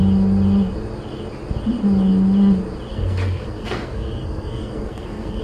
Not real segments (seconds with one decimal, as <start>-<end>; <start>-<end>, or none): 2.9-5.4